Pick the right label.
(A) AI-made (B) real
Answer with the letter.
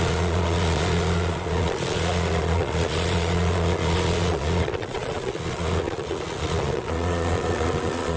A